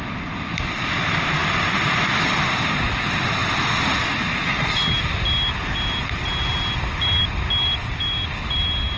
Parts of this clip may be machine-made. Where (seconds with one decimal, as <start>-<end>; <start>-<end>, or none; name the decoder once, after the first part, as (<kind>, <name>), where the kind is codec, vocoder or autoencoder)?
none